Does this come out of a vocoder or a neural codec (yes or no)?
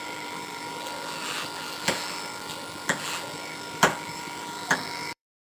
yes